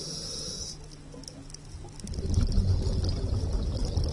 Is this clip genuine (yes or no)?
yes